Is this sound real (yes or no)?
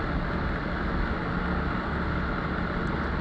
yes